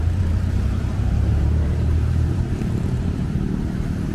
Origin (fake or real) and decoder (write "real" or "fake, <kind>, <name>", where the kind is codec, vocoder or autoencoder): fake, vocoder, BigVGAN v2